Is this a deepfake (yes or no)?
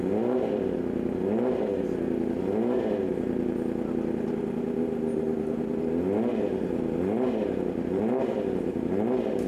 no